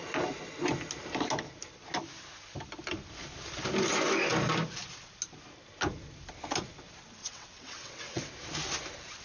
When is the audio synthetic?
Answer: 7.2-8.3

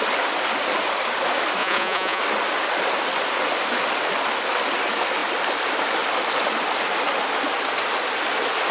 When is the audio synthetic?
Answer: 1.6-2.2

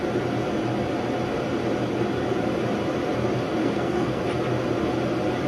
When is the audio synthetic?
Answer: 3.6-4.2

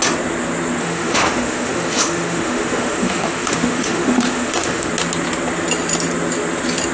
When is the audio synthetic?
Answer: 0.8-4.9

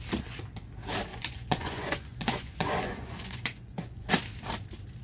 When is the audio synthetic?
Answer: 1.1-4.1

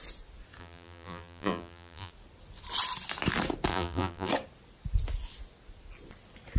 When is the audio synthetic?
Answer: 0.6-2.1; 3.7-4.3